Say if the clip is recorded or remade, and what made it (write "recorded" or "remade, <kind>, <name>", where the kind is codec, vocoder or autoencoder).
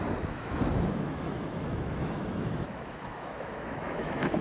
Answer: remade, autoencoder, DAC-VAE